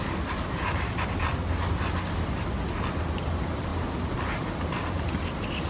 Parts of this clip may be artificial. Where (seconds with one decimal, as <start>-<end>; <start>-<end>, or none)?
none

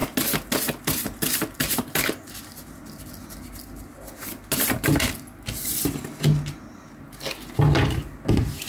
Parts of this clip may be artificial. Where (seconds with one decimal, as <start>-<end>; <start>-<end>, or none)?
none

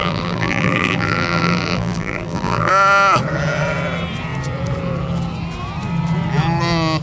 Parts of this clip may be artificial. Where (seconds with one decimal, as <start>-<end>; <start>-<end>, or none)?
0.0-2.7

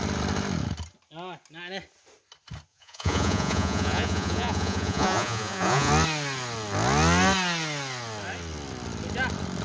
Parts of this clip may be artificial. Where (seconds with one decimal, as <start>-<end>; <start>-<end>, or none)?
2.7-5.9